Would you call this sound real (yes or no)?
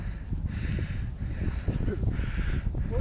yes